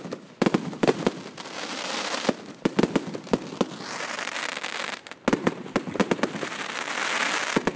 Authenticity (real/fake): real